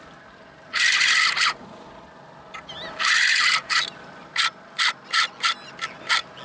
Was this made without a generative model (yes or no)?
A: yes